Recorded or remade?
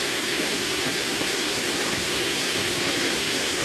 remade